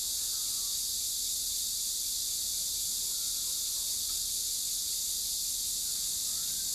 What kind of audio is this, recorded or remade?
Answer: recorded